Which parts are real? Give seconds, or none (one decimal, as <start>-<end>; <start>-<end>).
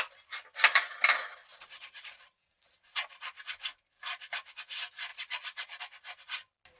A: 0.0-1.5; 3.4-5.1; 5.8-6.8